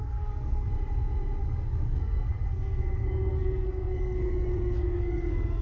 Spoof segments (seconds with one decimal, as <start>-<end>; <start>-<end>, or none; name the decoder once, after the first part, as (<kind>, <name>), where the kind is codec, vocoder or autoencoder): 0.0-0.7 (codec, SNAC); 1.4-5.6